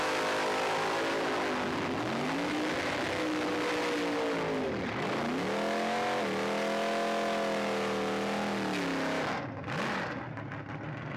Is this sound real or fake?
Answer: real